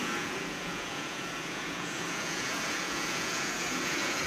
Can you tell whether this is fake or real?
fake